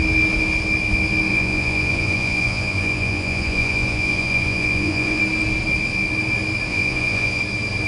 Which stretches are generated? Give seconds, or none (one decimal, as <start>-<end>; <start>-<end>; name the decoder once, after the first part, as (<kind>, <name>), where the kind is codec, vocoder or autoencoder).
1.3-5.2 (vocoder, Vocos); 6.7-7.4

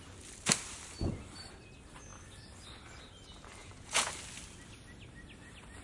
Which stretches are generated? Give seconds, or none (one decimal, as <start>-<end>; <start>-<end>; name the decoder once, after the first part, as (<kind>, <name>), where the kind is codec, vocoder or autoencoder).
3.6-4.1 (vocoder, Vocos)

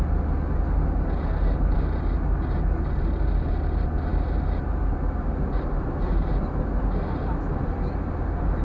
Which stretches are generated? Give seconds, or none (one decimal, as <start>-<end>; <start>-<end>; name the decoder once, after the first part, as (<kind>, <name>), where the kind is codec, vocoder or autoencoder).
none

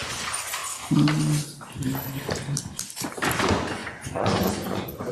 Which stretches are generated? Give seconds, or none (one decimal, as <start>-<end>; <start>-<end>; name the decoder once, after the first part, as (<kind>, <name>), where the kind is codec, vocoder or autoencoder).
0.0-0.6 (vocoder, Vocos); 3.4-5.1

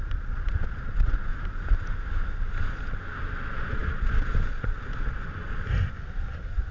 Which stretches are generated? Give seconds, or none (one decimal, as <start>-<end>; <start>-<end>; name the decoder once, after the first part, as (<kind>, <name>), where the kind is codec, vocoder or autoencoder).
0.0-1.3 (vocoder, Vocos); 3.4-5.5

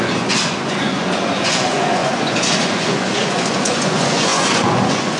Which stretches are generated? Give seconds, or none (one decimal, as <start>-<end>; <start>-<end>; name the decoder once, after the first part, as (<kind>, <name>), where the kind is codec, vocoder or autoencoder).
0.0-5.2 (vocoder, Vocos)

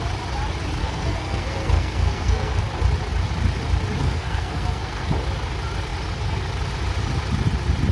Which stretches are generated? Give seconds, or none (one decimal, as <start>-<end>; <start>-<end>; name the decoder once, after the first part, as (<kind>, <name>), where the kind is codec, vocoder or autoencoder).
0.8-2.6 (codec, SNAC); 4.0-5.1

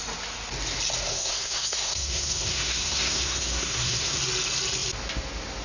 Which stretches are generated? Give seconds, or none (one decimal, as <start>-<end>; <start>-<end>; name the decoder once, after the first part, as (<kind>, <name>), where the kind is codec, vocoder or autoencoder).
1.1-4.2 (codec, SNAC)